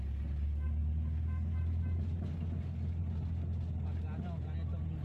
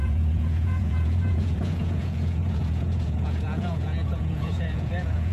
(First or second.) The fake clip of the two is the second